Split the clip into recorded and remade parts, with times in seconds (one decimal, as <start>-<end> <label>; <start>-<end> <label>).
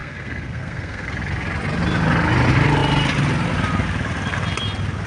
0.0-1.1 remade; 1.1-5.1 recorded